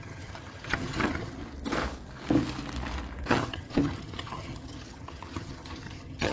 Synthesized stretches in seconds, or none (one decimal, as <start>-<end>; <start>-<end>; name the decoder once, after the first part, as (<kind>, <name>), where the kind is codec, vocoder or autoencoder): 0.0-1.4 (vocoder, HiFi-GAN); 3.3-6.3